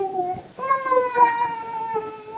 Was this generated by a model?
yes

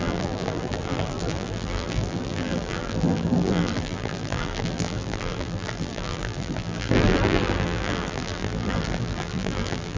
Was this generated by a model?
yes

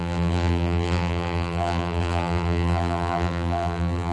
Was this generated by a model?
yes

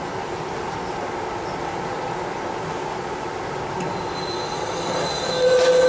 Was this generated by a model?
no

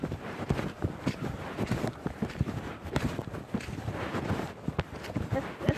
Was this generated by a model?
no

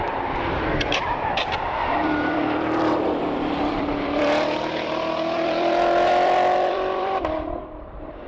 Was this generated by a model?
yes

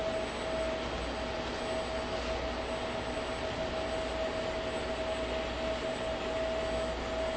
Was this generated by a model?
no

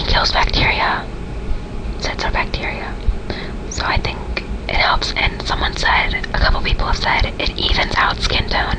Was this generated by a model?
no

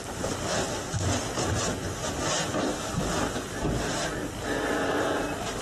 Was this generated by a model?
no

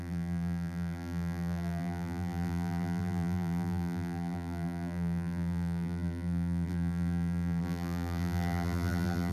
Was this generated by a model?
yes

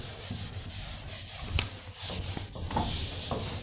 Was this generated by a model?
no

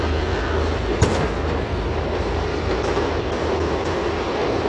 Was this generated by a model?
no